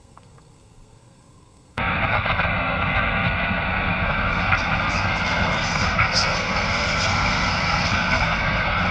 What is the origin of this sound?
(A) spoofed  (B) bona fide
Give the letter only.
A